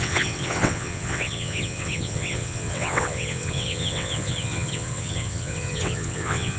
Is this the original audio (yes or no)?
no